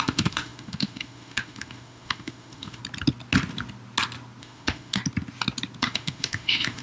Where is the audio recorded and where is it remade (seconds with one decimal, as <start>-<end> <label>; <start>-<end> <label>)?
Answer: 0.0-2.8 remade; 2.8-4.4 recorded; 4.4-5.0 remade; 5.0-5.8 recorded; 5.8-6.8 remade